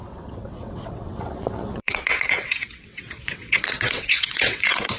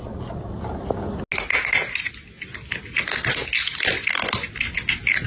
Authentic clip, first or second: second